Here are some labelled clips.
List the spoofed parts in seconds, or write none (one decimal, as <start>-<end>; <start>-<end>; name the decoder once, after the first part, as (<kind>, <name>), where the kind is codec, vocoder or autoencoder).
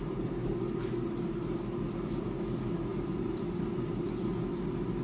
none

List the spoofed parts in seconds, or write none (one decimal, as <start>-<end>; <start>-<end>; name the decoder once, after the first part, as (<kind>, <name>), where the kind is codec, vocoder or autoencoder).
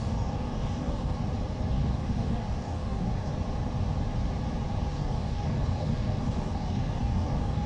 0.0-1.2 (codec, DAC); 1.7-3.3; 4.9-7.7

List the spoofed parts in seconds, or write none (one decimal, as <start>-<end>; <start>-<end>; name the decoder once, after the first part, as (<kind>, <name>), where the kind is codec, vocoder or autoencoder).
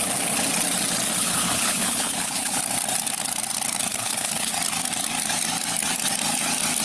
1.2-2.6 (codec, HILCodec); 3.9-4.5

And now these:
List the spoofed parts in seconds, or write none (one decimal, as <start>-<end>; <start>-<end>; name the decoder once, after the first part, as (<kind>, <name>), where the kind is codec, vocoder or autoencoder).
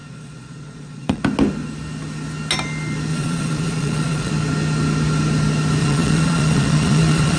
0.0-1.2 (vocoder, Vocos); 3.1-4.3; 5.8-7.4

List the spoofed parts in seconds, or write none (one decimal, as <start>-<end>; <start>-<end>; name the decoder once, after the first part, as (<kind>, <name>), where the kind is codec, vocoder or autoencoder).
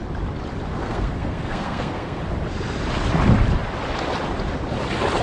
0.7-2.2 (codec, SNAC)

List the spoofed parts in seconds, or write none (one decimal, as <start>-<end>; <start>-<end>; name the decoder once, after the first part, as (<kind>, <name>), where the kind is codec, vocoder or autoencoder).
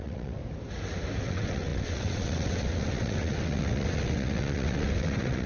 0.0-0.4 (vocoder, WaveNeXt); 1.2-5.5